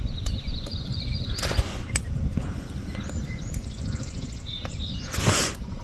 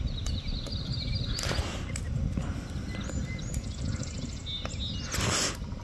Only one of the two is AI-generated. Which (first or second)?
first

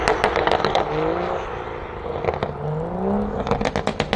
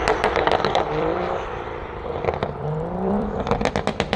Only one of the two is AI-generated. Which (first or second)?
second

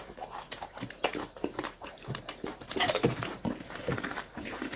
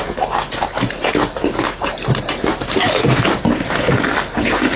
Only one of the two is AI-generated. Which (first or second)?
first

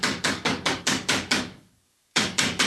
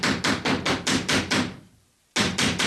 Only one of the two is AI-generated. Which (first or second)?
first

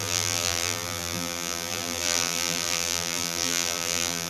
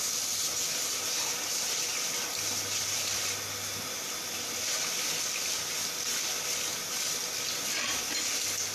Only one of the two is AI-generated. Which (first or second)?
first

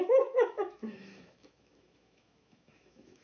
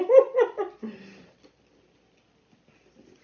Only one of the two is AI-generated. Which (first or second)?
first